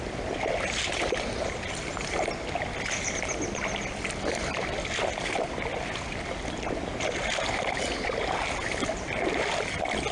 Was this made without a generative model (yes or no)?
yes